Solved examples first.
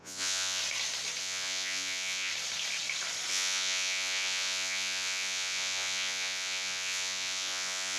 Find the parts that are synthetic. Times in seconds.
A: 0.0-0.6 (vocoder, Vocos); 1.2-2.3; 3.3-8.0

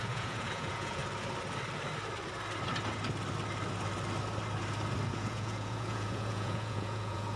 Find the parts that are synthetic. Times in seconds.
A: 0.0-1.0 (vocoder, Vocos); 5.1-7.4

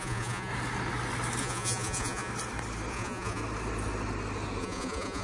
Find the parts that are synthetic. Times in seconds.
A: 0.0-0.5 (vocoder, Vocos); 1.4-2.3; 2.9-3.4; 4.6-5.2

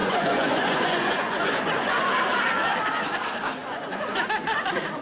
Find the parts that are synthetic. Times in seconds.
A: 0.0-2.1 (vocoder, Vocos); 3.6-4.2

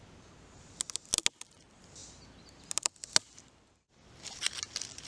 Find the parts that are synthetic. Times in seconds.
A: none

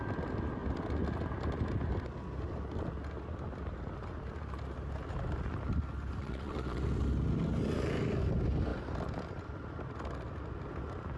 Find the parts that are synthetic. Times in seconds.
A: 6.2-6.8 (vocoder, Vocos)